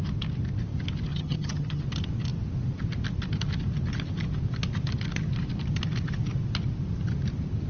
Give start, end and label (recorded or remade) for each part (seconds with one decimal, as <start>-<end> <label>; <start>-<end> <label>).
0.0-1.1 recorded; 1.1-1.8 remade; 1.8-7.7 recorded